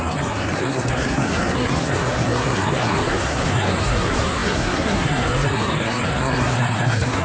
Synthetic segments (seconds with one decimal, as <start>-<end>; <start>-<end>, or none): 0.0-7.2